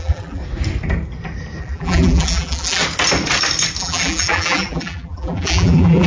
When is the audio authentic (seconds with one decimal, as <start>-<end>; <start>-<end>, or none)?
0.4-1.6; 2.8-3.8